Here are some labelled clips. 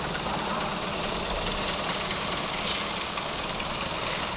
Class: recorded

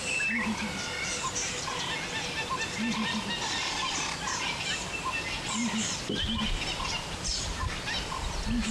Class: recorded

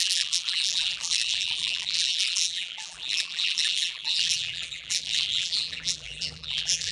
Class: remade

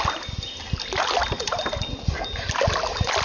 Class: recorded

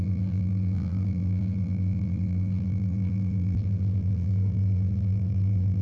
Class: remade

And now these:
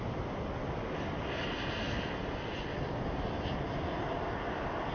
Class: recorded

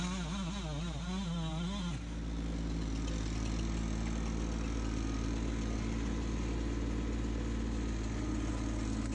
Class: recorded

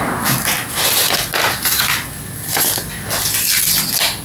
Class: recorded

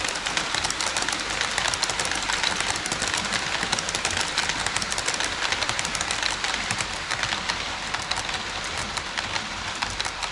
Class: remade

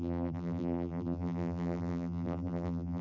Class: remade